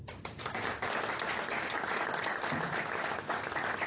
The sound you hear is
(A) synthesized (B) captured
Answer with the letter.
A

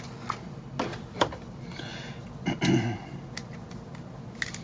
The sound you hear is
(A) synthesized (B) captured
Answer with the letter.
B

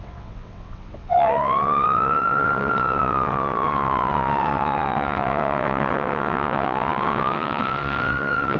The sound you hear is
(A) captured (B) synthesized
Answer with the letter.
B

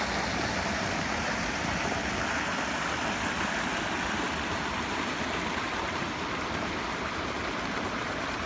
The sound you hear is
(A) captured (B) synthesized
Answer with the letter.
A